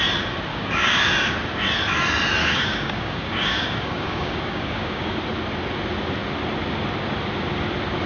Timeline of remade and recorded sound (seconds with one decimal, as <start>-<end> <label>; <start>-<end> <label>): 0.0-0.5 recorded; 0.5-1.1 remade; 1.1-2.4 recorded; 2.4-5.2 remade; 5.2-8.1 recorded